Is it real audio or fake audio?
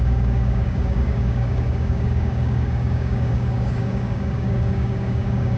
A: fake